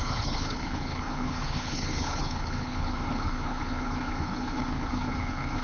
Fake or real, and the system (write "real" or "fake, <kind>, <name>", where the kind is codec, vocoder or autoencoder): fake, codec, HILCodec